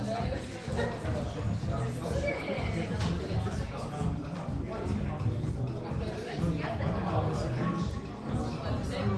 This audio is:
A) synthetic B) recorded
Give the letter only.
B